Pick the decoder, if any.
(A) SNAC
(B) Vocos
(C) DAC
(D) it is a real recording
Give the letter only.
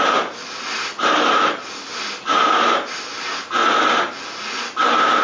D